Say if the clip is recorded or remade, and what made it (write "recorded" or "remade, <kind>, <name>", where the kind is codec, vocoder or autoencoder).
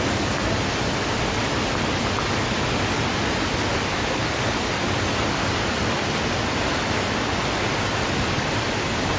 recorded